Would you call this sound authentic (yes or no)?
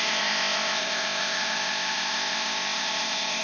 no